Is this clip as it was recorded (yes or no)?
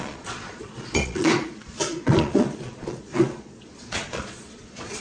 no